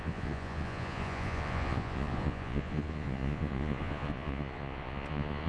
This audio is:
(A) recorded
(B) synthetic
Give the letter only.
B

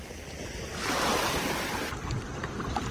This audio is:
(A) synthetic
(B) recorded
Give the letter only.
B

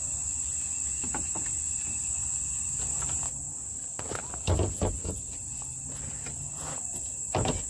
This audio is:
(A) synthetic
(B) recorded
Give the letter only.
B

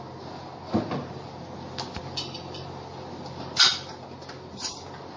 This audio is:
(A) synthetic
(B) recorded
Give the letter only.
B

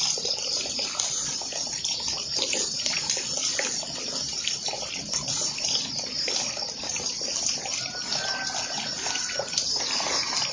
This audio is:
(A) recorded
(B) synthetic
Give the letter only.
A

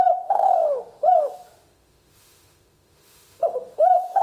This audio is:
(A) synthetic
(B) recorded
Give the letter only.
A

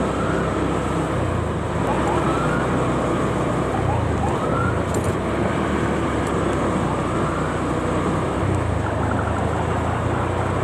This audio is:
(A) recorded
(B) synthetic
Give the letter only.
A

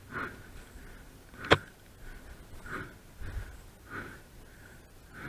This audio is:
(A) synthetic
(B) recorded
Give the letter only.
B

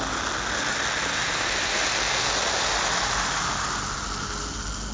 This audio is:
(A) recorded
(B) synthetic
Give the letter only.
A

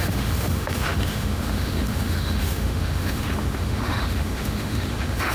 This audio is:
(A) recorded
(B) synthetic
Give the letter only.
B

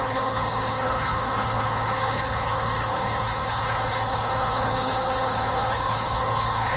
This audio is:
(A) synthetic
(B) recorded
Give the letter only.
A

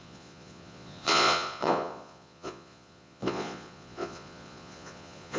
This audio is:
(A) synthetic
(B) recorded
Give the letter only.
A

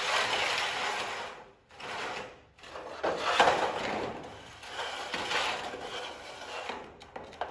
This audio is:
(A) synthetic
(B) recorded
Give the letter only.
B